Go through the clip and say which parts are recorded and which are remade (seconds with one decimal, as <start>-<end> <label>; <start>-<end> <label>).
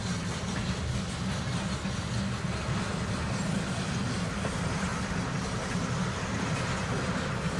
0.0-7.6 recorded